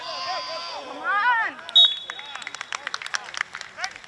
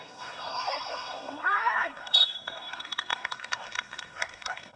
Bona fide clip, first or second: first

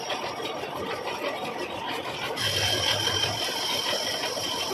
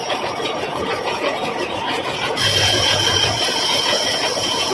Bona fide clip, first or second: first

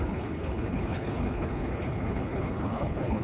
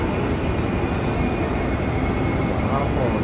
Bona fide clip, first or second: second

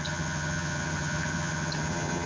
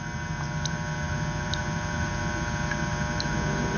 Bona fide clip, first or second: second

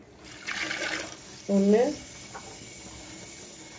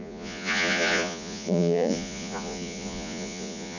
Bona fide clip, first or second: first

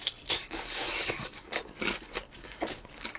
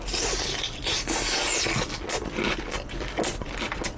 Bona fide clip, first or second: second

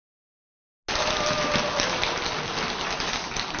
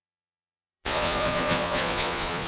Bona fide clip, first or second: first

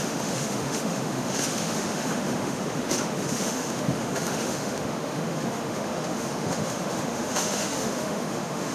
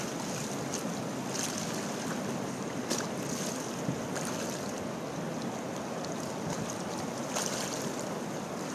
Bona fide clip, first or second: second